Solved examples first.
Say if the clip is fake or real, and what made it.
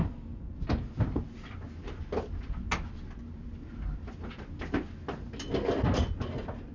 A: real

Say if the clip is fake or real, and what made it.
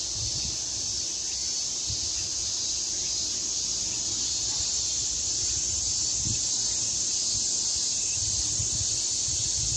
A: real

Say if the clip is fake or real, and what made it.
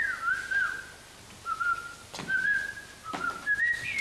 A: real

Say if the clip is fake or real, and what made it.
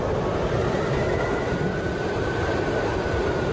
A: real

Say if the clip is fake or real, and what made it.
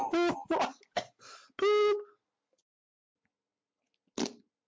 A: real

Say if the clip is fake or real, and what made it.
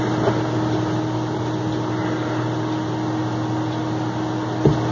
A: real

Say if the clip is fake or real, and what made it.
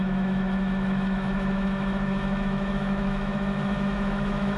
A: fake, autoencoder, DAC-VAE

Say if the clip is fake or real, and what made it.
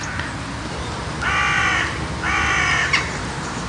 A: real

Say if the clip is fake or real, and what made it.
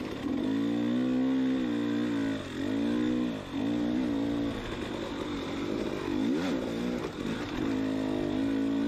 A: real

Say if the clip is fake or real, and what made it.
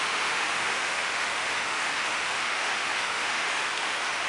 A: fake, autoencoder, DAC-VAE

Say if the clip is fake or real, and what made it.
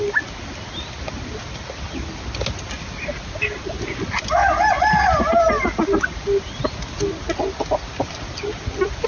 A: real